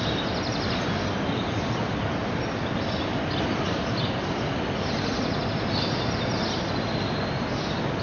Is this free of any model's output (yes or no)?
yes